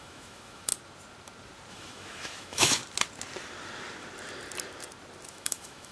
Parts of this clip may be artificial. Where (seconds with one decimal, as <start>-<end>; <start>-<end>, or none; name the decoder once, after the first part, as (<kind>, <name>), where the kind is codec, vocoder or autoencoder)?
0.0-0.7 (autoencoder, DAC-VAE); 1.7-2.8; 5.3-5.9